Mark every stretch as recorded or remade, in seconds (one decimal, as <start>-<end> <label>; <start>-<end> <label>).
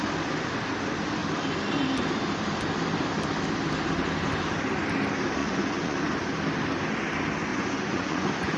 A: 0.0-5.4 recorded; 5.4-6.0 remade; 6.0-7.5 recorded; 7.5-8.6 remade